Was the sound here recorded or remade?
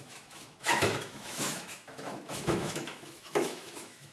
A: remade